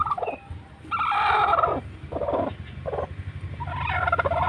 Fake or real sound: real